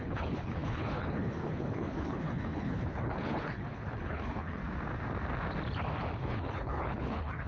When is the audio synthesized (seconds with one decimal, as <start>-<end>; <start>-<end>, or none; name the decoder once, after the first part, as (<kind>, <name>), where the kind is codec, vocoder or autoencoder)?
0.0-4.6 (codec, HILCodec); 6.2-7.5